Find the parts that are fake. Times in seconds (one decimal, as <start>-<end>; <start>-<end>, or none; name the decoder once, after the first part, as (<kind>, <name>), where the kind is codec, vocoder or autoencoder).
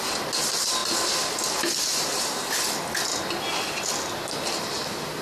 none